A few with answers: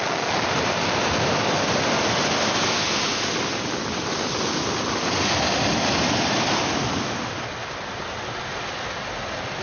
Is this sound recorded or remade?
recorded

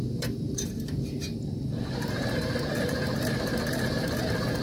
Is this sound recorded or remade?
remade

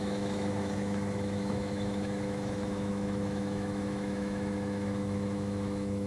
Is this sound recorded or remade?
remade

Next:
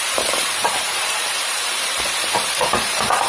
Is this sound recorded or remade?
remade